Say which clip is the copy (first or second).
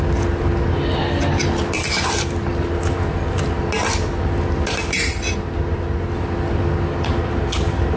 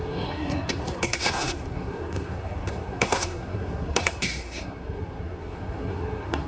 second